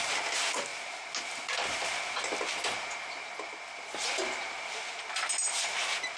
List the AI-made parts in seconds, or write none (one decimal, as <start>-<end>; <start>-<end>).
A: none